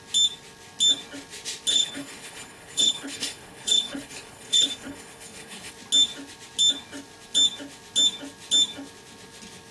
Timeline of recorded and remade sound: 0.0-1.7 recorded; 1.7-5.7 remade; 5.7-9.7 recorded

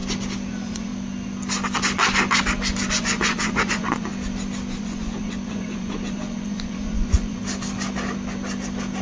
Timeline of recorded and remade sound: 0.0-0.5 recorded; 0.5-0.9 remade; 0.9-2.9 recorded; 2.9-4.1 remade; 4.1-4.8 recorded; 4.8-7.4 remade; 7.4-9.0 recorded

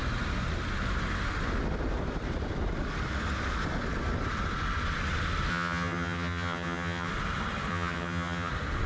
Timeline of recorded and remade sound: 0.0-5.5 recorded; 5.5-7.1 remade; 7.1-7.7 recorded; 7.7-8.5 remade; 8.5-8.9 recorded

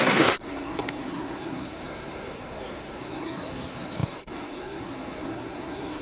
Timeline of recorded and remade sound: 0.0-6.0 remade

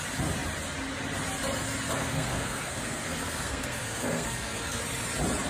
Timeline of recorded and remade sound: 0.0-2.0 recorded; 2.0-4.8 remade; 4.8-5.5 recorded

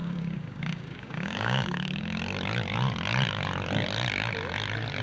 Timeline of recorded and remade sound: 0.0-2.2 remade; 2.2-5.0 recorded

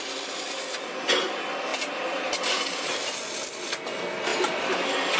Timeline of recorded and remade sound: 0.0-1.7 recorded; 1.7-2.3 remade; 2.3-5.2 recorded

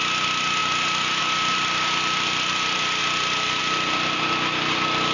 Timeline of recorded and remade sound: 0.0-5.1 recorded